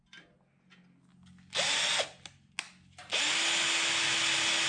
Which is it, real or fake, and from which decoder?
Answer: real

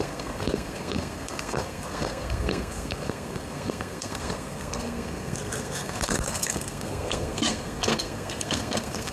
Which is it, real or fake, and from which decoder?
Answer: fake, codec, SNAC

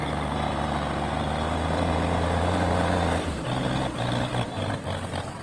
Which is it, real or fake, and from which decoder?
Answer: real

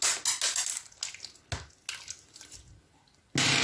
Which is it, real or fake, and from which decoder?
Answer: real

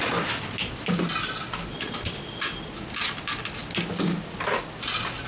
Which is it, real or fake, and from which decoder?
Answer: real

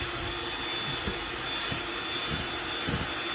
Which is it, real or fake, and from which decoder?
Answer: real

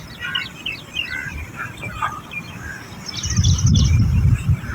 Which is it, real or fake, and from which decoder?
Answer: real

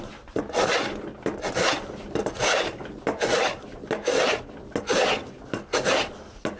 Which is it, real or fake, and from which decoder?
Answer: real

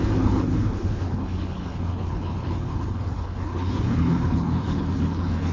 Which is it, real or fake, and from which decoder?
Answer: fake, codec, HILCodec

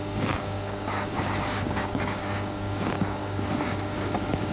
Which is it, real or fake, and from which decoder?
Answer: fake, codec, DAC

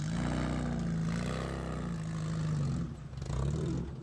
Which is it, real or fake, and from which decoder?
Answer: real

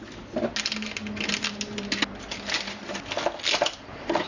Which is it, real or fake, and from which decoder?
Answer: real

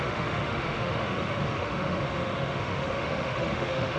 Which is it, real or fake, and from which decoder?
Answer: fake, autoencoder, DAC-VAE